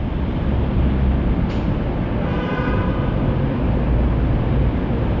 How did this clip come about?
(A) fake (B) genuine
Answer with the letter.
B